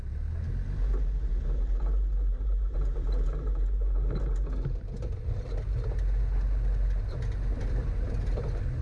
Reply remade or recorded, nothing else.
recorded